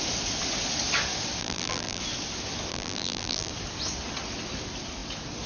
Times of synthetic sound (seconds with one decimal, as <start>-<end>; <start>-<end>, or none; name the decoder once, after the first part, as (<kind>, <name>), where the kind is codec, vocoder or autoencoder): 1.4-2.0 (vocoder, BigVGAN v2); 2.7-3.5